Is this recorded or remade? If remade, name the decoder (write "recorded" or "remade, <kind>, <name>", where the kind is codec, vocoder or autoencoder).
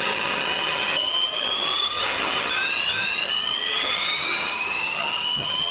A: remade, vocoder, HiFi-GAN